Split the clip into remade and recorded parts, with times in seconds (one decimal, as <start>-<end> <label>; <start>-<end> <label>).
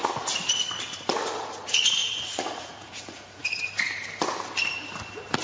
0.0-2.0 recorded; 2.0-3.7 remade; 3.7-5.4 recorded